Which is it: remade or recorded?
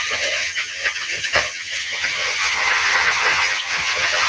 remade